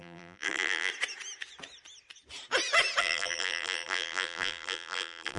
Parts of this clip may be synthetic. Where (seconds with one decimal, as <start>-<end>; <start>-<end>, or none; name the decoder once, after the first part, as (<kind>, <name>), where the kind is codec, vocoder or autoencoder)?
0.0-0.9 (vocoder, BigVGAN v2); 3.0-5.4